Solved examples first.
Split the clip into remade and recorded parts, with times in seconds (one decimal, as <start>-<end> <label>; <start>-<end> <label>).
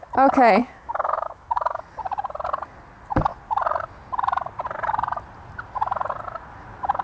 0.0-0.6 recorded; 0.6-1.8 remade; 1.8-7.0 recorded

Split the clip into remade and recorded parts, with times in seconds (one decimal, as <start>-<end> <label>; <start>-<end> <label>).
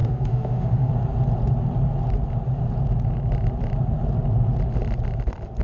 0.0-0.9 remade; 0.9-5.6 recorded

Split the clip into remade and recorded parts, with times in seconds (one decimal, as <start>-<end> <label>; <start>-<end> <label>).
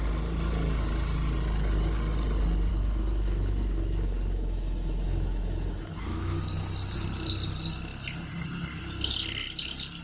0.0-2.7 recorded; 2.7-6.4 remade; 6.4-10.0 recorded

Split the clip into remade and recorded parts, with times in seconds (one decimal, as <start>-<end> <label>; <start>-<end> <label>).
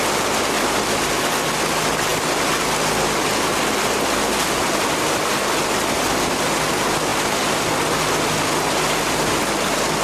0.0-10.0 recorded